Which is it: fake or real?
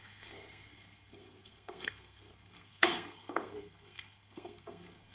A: fake